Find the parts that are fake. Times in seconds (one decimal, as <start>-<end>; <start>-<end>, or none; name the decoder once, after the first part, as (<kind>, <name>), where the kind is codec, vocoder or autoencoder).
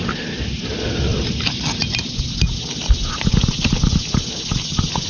none